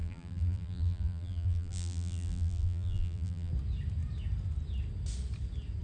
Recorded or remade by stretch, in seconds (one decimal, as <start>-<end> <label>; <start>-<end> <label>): 0.0-3.5 remade; 3.5-5.8 recorded